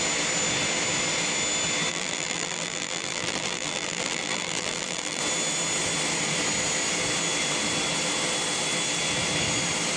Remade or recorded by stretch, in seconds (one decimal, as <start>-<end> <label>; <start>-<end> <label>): 0.0-1.9 recorded; 1.9-5.2 remade; 5.2-10.0 recorded